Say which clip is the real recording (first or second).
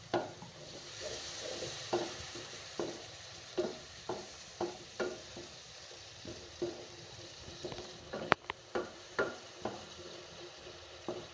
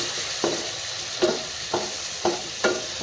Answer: second